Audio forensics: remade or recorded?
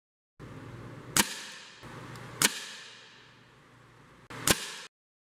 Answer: recorded